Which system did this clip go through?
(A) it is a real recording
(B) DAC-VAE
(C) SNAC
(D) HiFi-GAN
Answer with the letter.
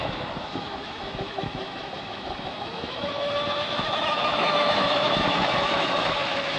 B